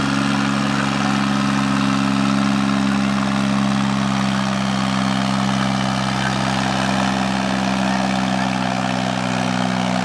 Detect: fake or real real